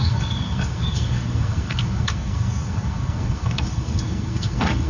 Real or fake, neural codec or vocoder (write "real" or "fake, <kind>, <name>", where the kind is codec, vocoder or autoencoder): fake, codec, SNAC